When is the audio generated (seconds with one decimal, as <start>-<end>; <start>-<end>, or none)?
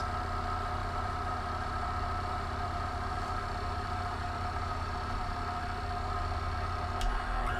0.8-5.4